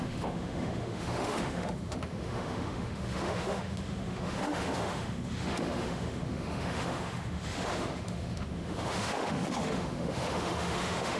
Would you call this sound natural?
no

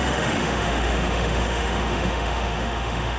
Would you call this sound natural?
no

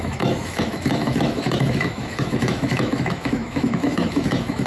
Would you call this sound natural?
no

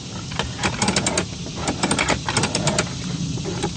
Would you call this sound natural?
yes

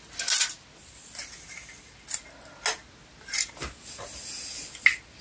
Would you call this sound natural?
yes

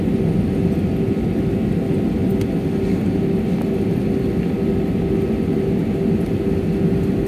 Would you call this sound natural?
yes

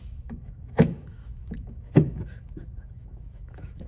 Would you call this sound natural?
no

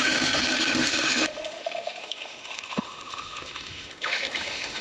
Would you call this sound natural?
no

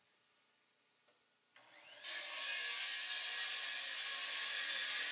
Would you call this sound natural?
yes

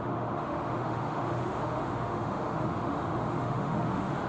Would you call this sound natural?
no